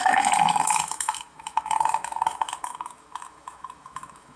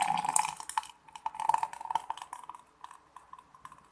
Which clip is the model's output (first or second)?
first